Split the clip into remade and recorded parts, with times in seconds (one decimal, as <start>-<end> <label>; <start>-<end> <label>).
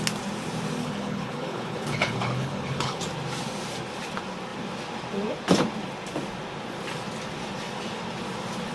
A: 0.0-0.8 recorded; 0.8-3.0 remade; 3.0-8.7 recorded